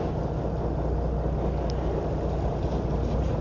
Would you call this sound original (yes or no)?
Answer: yes